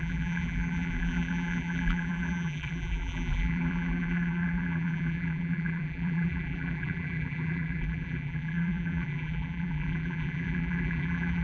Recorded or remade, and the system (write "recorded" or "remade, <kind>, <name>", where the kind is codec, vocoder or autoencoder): remade, vocoder, BigVGAN v2